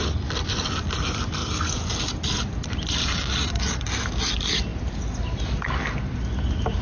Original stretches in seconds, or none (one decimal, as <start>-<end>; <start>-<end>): 0.0-3.0; 3.6-6.8